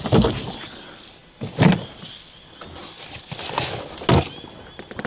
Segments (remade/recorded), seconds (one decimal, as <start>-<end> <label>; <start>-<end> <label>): 0.0-5.1 recorded